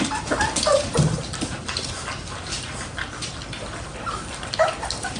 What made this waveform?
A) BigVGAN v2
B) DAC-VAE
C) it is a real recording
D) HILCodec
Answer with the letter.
C